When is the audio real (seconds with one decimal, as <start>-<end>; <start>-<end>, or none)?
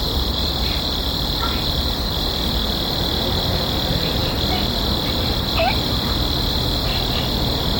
0.0-7.8